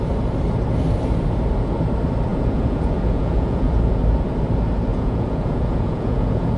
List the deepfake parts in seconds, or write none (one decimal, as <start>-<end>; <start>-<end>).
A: 2.3-4.0; 4.9-6.6